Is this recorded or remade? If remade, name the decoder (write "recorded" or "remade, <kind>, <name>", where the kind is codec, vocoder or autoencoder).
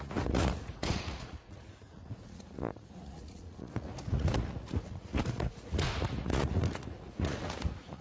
remade, vocoder, Vocos